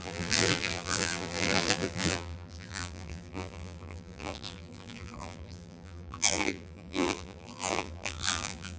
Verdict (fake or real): fake